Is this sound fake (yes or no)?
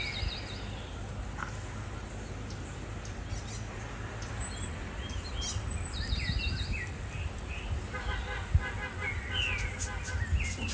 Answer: no